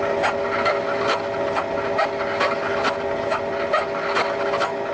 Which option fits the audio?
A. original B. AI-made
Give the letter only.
A